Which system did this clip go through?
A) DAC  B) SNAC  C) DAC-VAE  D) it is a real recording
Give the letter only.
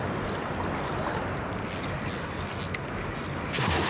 D